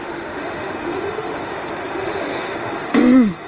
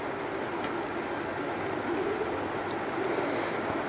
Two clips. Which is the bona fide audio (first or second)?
second